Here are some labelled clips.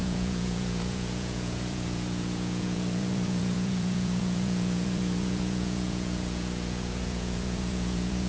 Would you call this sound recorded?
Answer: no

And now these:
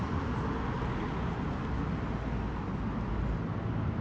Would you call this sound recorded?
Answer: yes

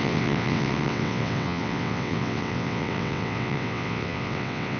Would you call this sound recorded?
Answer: no